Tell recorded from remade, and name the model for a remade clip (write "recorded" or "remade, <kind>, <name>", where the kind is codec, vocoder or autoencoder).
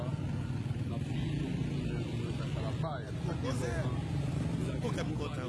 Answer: recorded